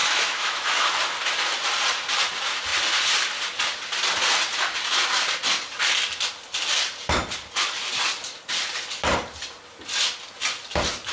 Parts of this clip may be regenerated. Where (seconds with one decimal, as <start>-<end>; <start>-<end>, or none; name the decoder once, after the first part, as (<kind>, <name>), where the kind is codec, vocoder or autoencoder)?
0.0-1.0 (autoencoder, DAC-VAE)